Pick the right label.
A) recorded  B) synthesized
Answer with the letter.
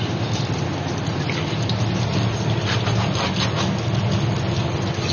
A